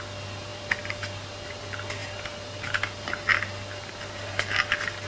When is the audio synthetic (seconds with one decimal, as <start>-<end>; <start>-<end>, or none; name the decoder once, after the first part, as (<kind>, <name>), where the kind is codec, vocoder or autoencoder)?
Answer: 0.5-1.5 (vocoder, BigVGAN v2); 2.0-5.1

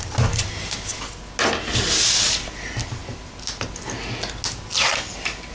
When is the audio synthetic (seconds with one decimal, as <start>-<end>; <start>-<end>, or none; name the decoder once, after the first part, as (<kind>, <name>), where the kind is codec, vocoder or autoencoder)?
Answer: none

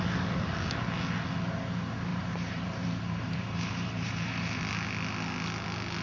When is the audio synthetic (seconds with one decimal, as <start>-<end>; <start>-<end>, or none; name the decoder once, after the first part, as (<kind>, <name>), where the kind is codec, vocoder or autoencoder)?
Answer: 2.1-4.6 (vocoder, BigVGAN v2)

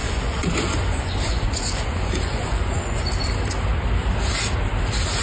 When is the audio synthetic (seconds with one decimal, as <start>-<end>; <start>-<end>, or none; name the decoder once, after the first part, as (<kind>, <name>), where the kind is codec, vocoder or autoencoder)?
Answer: 0.0-3.1 (vocoder, Vocos)